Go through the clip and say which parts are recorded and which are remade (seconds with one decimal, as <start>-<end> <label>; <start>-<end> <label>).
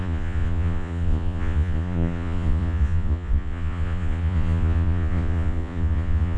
0.0-6.4 remade